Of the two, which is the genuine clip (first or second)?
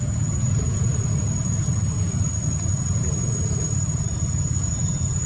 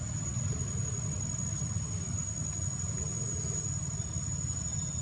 second